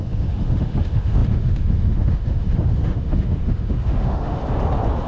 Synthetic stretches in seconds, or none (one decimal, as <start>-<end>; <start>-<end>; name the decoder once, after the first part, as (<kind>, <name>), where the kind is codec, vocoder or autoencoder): 0.0-4.4 (autoencoder, DAC-VAE)